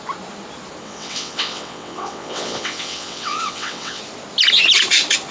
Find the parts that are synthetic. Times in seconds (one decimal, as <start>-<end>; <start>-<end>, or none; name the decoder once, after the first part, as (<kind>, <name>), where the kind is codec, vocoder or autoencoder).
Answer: 0.8-4.0 (vocoder, WaveNeXt)